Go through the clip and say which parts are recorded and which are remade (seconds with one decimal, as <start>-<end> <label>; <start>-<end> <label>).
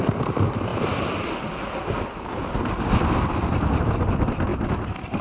0.0-5.2 recorded